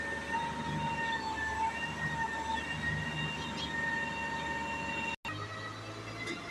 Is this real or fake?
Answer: real